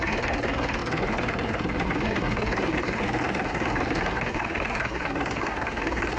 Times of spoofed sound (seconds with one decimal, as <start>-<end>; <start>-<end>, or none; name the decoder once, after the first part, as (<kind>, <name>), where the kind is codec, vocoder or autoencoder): 0.0-6.2 (codec, SNAC)